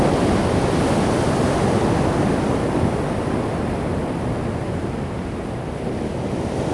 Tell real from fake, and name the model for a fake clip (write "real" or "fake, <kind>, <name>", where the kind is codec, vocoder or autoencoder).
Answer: real